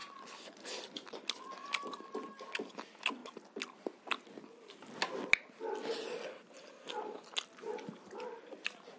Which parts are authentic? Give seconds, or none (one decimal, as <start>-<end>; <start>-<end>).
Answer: 0.0-9.0